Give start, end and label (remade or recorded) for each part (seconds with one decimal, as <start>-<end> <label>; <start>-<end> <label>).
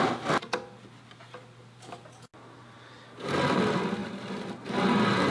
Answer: 0.0-5.3 recorded